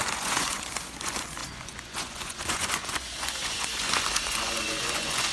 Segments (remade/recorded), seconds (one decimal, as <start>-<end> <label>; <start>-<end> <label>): 0.0-5.3 remade